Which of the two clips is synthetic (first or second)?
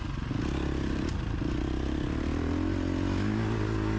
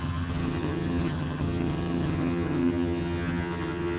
second